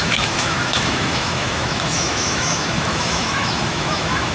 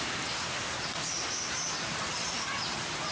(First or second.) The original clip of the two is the second